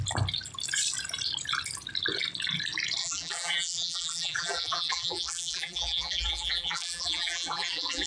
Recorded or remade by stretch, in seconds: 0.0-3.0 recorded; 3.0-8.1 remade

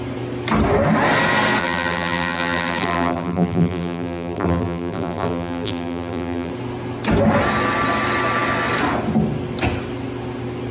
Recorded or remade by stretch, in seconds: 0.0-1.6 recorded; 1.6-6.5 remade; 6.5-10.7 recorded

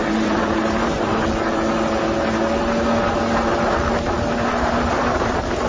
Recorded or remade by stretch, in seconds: 0.0-1.1 remade; 1.1-4.5 recorded; 4.5-5.7 remade

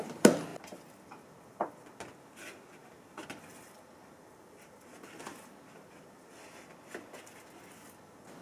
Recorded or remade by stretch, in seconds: 0.0-8.4 recorded

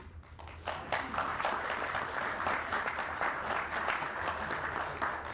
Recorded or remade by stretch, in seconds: 0.0-1.3 recorded; 1.3-4.5 remade; 4.5-5.3 recorded

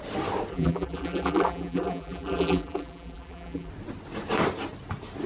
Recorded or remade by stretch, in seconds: 0.0-0.5 recorded; 0.5-3.7 remade; 3.7-5.3 recorded